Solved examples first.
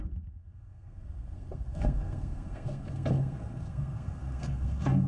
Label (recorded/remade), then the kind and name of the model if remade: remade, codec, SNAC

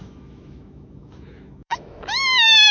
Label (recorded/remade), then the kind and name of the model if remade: remade, autoencoder, DAC-VAE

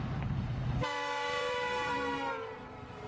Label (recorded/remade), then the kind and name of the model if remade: remade, vocoder, BigVGAN v2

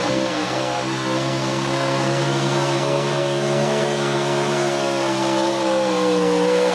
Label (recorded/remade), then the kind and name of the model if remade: remade, codec, SNAC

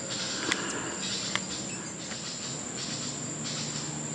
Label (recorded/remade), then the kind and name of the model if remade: recorded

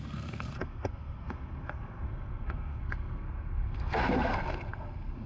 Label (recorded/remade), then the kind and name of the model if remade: remade, codec, SNAC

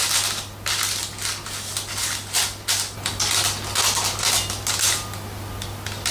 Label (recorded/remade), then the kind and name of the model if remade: recorded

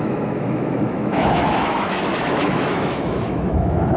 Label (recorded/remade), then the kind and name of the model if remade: remade, autoencoder, DAC-VAE